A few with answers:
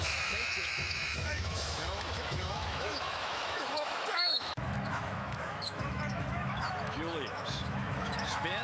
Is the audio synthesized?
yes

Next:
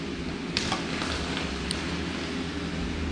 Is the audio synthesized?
no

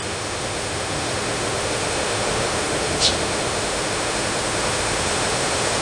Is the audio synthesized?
yes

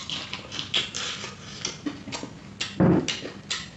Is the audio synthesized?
no